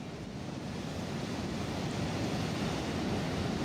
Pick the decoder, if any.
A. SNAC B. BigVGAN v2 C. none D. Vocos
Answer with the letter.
C